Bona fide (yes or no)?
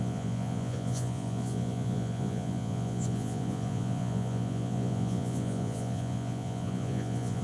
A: no